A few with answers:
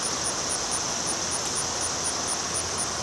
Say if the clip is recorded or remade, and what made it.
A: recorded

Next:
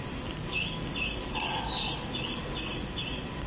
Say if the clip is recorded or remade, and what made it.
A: recorded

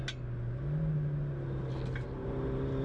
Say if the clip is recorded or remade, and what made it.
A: recorded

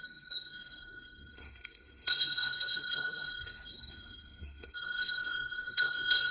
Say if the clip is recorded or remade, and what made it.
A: remade, codec, SNAC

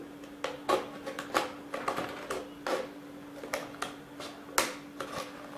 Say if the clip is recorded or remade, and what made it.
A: recorded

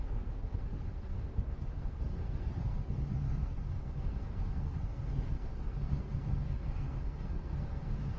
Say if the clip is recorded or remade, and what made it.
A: remade, codec, SNAC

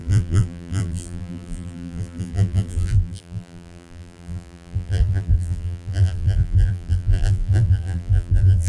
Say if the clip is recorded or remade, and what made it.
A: remade, vocoder, BigVGAN v2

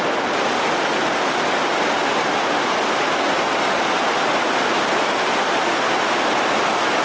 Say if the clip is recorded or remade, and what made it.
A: recorded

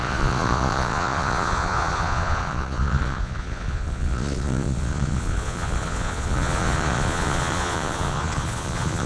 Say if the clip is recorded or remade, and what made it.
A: remade, vocoder, Vocos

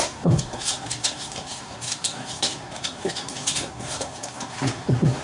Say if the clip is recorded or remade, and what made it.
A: remade, codec, SNAC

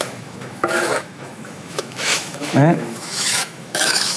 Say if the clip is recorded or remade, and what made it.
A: remade, autoencoder, DAC-VAE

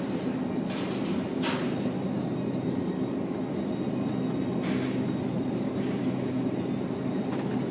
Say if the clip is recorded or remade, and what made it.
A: recorded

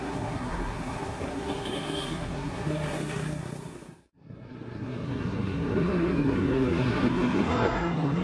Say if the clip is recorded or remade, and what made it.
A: remade, codec, SNAC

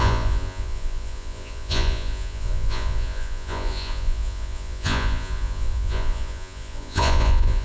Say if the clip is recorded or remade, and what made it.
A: remade, vocoder, Vocos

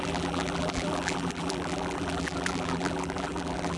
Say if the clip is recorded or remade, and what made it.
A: remade, vocoder, BigVGAN v2